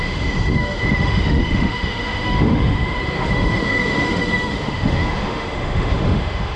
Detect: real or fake fake